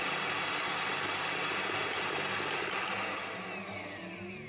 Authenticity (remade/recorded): recorded